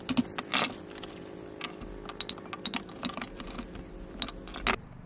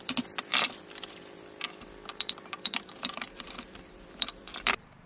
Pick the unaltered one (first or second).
first